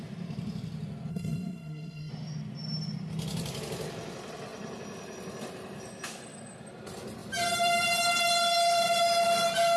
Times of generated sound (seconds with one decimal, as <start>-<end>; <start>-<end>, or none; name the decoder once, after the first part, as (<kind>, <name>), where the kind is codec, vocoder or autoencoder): 1.1-2.1 (codec, SNAC)